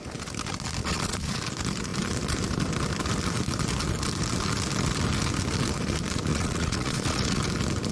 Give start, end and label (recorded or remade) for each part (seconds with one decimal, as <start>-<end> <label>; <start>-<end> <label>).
0.0-0.8 recorded; 0.8-1.4 remade; 1.4-6.3 recorded; 6.3-7.4 remade; 7.4-7.9 recorded

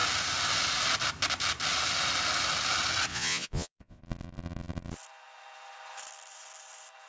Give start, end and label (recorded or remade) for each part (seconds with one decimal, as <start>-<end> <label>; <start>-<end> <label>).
0.0-3.1 recorded; 3.1-4.0 remade; 4.0-7.1 recorded

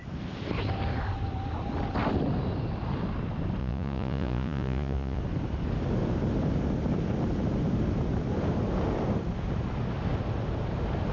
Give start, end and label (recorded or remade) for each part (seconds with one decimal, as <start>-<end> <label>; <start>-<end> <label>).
0.0-3.6 recorded; 3.6-5.2 remade; 5.2-11.1 recorded